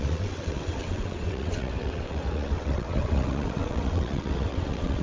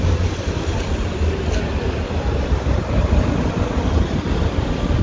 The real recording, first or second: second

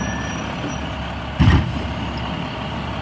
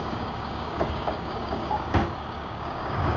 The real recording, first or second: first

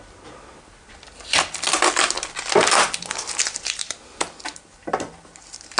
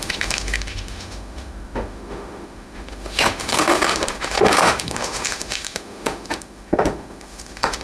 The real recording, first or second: first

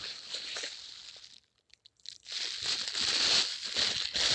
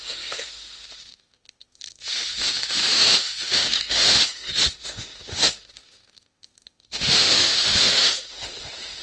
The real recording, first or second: first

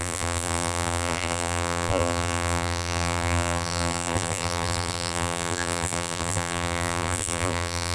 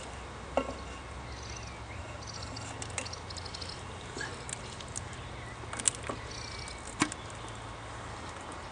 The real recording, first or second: second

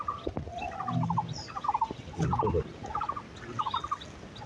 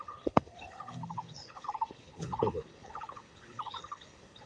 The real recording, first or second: first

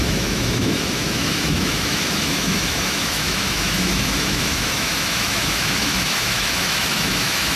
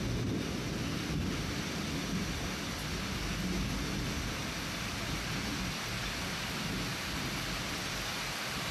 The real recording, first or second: second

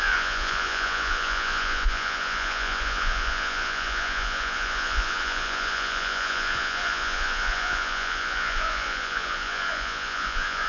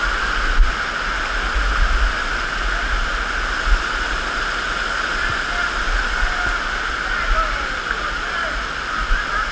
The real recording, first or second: second